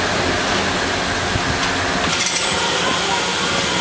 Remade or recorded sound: recorded